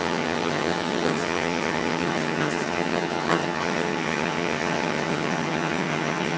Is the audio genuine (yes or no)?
no